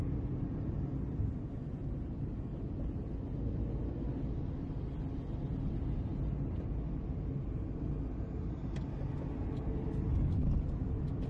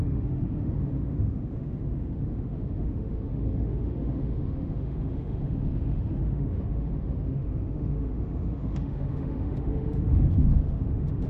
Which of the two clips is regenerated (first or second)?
second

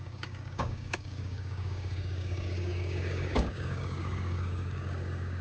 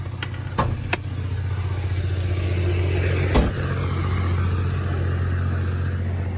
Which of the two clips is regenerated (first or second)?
first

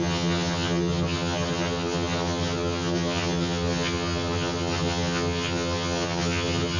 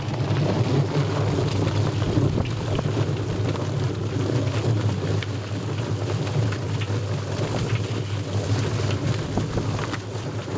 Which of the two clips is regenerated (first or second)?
first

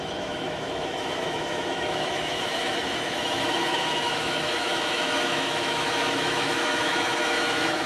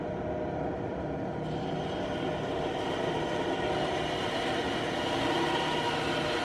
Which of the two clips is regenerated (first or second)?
first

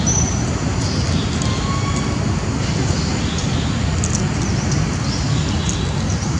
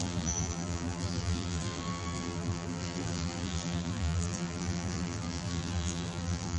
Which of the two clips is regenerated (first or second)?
second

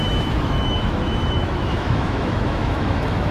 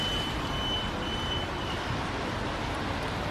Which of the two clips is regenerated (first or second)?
first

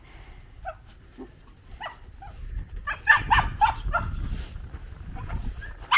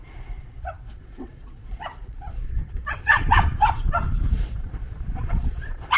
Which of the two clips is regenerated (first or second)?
second